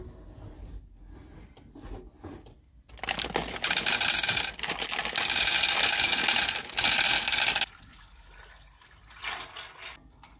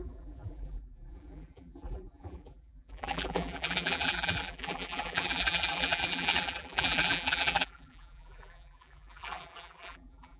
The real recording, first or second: first